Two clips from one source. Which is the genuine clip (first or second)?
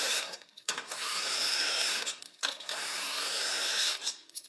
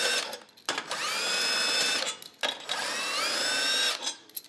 second